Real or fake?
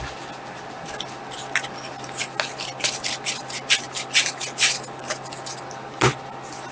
real